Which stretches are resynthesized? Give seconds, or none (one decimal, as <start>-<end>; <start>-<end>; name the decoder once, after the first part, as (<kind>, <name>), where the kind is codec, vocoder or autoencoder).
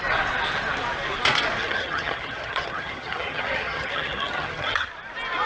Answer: 1.6-4.9 (vocoder, HiFi-GAN)